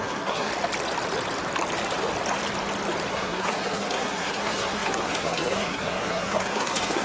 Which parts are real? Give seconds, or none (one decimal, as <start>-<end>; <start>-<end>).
0.5-3.1